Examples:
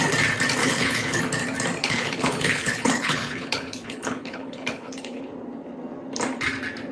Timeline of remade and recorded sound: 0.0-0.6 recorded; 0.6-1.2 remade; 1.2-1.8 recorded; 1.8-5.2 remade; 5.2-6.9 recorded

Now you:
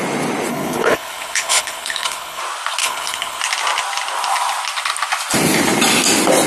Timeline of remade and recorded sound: 0.0-0.5 recorded; 0.5-2.4 remade; 2.4-2.8 recorded; 2.8-3.4 remade; 3.4-6.5 recorded

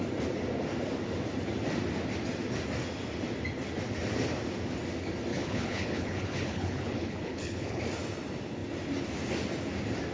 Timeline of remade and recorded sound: 0.0-5.3 recorded; 5.3-7.8 remade; 7.8-10.1 recorded

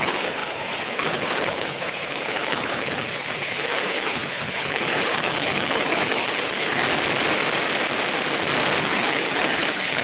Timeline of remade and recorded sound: 0.0-6.8 remade; 6.8-8.8 recorded; 8.8-10.0 remade

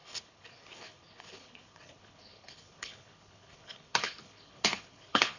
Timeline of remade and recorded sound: 0.0-5.4 remade

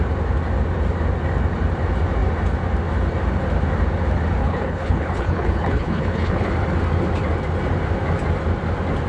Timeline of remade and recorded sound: 0.0-4.4 recorded; 4.4-6.5 remade; 6.5-9.1 recorded